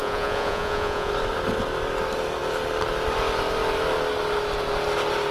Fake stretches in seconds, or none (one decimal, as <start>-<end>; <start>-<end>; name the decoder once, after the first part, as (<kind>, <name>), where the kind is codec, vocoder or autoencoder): 0.0-1.1 (vocoder, Vocos)